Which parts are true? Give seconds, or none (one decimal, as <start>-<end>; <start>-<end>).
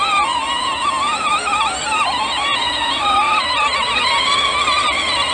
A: 0.0-0.6; 1.3-2.5; 3.0-5.3